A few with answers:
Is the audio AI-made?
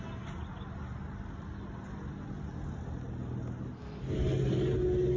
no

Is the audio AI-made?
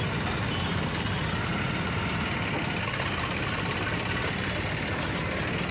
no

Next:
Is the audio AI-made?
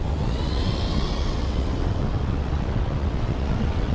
yes